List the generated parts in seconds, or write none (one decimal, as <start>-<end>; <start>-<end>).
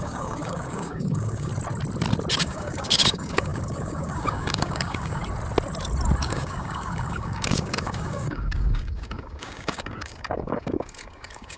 0.0-1.5; 2.4-5.2; 6.2-11.6